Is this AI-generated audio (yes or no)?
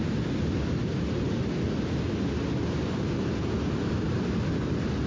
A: no